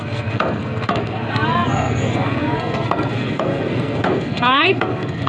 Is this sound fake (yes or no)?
yes